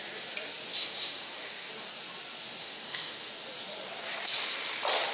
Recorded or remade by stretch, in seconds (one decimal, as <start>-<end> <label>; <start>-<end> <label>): 0.0-0.8 recorded; 0.8-1.7 remade; 1.7-2.6 recorded; 2.6-3.3 remade; 3.3-5.1 recorded

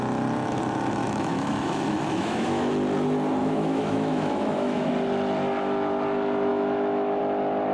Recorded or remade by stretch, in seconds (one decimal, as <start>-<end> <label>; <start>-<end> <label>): 0.0-1.0 recorded; 1.0-2.7 remade; 2.7-3.4 recorded; 3.4-4.9 remade; 4.9-6.5 recorded; 6.5-7.2 remade; 7.2-7.7 recorded

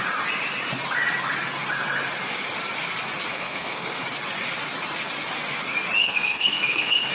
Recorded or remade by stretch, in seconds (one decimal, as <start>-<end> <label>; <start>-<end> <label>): 0.0-3.3 recorded; 3.3-4.0 remade; 4.0-6.0 recorded; 6.0-7.1 remade

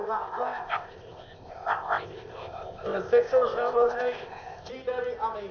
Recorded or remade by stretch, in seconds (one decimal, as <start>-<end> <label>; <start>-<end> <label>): 0.0-4.7 remade; 4.7-5.5 recorded

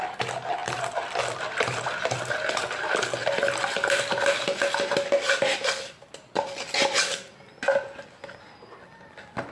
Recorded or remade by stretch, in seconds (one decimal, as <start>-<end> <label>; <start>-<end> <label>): 0.0-9.5 recorded

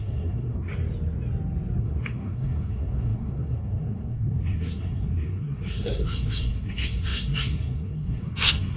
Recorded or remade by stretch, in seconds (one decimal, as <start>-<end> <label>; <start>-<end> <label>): 0.0-0.7 remade; 0.7-1.8 recorded; 1.8-8.8 remade

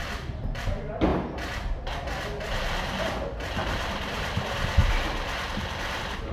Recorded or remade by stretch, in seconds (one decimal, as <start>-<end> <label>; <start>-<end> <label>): 0.0-6.3 recorded